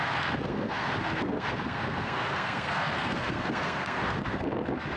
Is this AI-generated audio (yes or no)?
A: yes